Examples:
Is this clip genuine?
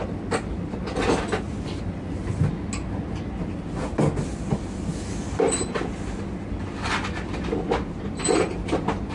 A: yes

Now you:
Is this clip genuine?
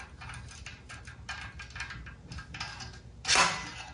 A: yes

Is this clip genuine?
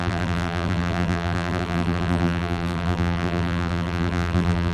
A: no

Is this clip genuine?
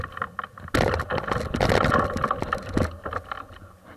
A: yes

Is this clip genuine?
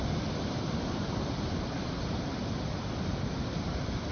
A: yes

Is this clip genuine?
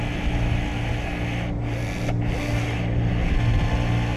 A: yes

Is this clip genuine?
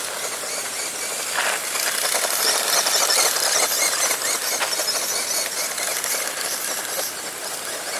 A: yes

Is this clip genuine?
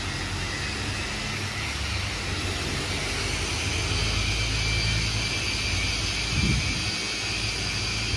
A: yes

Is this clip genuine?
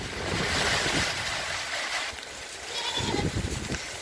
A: yes